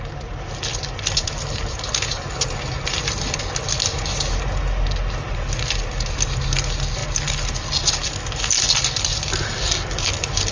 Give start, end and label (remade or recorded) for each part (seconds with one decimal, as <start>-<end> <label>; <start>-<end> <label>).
0.0-10.5 recorded